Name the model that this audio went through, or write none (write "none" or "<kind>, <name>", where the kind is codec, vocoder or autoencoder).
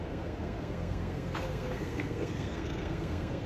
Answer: codec, SNAC